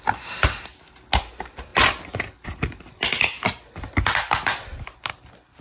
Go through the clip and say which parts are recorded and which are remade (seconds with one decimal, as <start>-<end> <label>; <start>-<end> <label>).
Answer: 0.0-1.7 recorded; 1.7-5.1 remade; 5.1-5.6 recorded